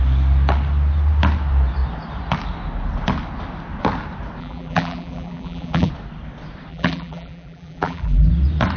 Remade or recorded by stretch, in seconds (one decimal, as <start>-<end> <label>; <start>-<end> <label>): 0.0-4.4 recorded; 4.4-5.9 remade; 5.9-6.7 recorded; 6.7-8.3 remade; 8.3-8.8 recorded